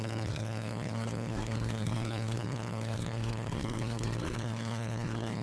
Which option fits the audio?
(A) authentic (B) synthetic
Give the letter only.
B